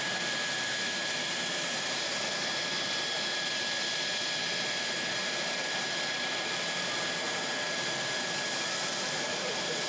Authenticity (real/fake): real